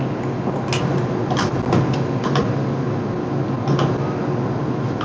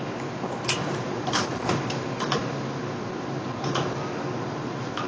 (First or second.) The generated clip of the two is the second